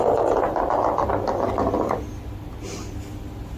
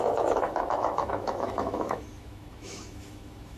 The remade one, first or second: second